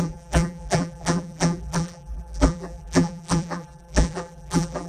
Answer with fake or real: fake